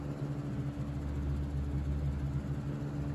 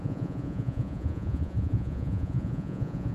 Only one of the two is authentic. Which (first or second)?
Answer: first